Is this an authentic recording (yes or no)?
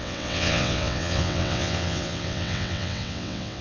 no